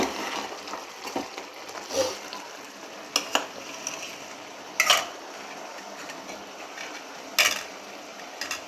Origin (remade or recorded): recorded